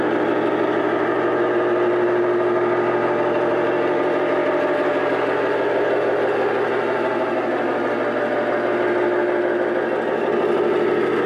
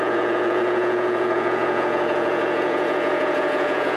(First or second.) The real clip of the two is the first